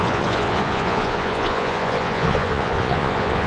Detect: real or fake fake